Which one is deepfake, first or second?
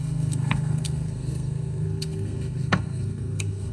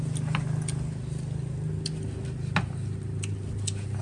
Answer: first